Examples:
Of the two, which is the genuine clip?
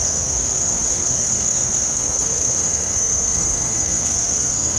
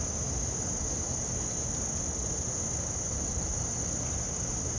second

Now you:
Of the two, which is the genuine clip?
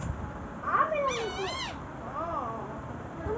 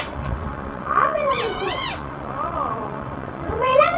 first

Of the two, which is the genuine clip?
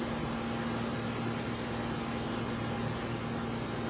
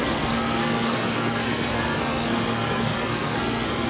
first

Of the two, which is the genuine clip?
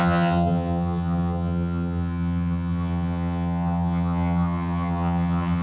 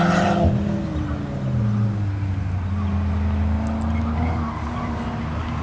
second